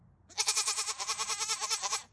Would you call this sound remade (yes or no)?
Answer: no